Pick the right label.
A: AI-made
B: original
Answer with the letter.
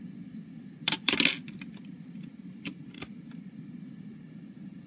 B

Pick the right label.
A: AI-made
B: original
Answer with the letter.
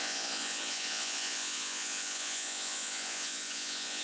A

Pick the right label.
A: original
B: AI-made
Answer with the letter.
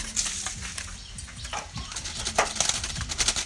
A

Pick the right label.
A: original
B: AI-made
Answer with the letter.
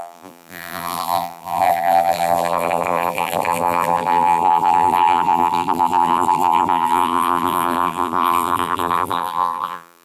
B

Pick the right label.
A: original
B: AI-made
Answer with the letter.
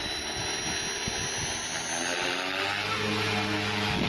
A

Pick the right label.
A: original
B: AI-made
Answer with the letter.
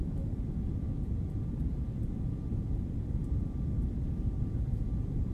B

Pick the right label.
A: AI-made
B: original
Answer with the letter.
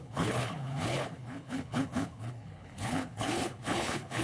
A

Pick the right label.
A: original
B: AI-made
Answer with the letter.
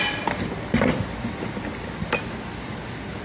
A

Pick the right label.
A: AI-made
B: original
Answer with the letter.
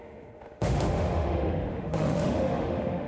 A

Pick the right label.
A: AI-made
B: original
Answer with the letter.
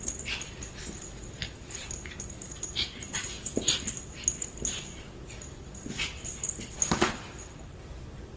B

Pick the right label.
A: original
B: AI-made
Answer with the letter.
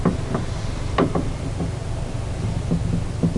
A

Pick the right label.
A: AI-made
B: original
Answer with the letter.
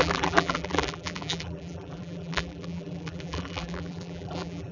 A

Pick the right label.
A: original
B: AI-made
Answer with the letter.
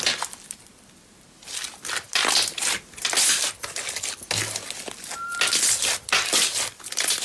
A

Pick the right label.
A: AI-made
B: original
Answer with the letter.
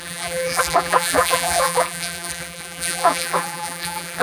A